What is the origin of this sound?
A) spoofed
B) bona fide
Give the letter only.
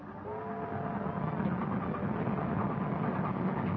B